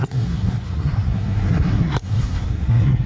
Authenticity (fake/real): fake